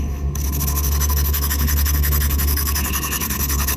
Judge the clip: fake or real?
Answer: fake